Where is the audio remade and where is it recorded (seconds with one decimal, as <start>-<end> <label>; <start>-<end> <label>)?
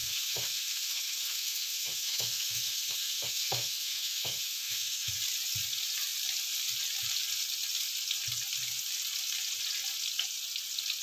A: 0.0-5.1 remade; 5.1-11.0 recorded